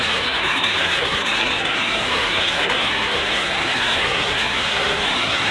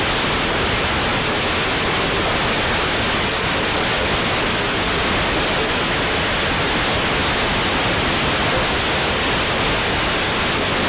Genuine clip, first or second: second